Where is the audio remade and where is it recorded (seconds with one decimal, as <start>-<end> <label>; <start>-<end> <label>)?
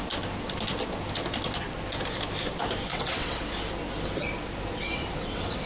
0.0-2.9 recorded; 2.9-3.4 remade; 3.4-4.9 recorded; 4.9-5.7 remade